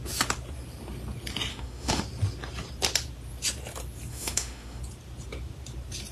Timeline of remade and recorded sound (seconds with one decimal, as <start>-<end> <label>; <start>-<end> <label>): 0.0-1.5 recorded; 1.5-2.0 remade; 2.0-4.1 recorded; 4.1-4.8 remade; 4.8-6.1 recorded